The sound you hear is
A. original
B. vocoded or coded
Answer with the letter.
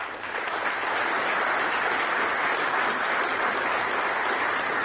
A